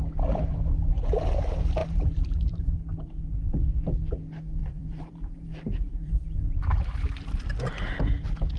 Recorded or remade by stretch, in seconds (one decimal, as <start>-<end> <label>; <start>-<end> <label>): 0.0-1.8 recorded; 1.8-2.6 remade; 2.6-4.6 recorded; 4.6-6.1 remade; 6.1-8.6 recorded